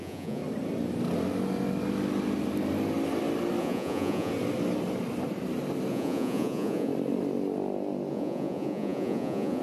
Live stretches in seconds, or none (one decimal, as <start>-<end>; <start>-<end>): 0.4-3.6; 4.3-5.9; 6.9-8.1